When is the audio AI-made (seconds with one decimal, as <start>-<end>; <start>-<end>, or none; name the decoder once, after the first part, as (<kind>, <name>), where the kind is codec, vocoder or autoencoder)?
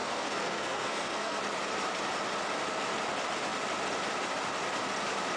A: 0.0-1.4 (codec, SNAC)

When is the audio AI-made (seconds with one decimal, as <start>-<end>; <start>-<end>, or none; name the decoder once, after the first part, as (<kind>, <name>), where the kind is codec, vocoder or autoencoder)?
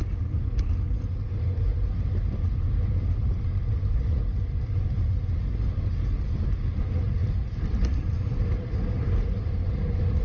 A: 3.2-4.6 (vocoder, BigVGAN v2); 7.2-8.4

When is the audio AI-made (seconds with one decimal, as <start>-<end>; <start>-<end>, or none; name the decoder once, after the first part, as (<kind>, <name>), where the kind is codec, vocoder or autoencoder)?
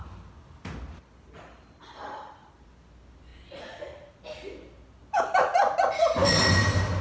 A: none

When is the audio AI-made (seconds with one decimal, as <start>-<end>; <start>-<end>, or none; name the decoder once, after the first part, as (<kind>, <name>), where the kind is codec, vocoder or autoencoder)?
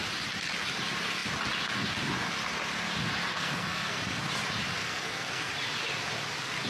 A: 3.3-4.2 (codec, SNAC); 4.8-5.5